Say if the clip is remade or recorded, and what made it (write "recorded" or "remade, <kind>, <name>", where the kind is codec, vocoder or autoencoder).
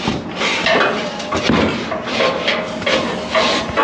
recorded